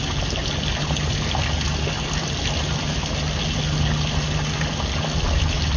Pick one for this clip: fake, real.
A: real